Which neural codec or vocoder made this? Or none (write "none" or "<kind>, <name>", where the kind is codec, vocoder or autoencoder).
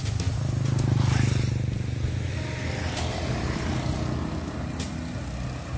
none